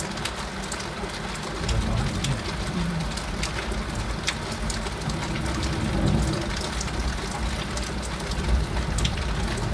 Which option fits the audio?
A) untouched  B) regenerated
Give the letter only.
A